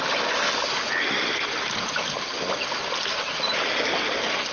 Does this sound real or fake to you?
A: real